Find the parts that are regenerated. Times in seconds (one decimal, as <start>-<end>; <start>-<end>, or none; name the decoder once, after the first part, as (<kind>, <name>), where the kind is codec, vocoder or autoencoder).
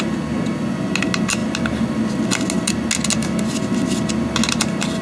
none